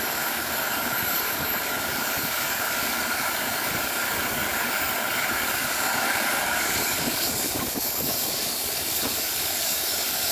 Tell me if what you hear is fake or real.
fake